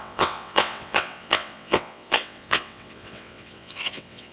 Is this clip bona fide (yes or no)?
no